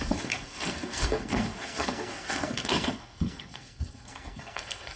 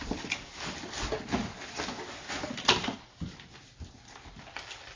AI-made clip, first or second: first